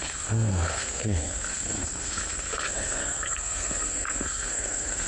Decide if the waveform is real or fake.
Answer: fake